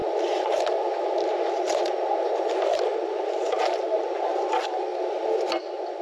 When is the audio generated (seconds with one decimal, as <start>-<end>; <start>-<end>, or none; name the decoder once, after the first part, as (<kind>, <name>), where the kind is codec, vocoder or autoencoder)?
2.9-4.4 (vocoder, BigVGAN v2)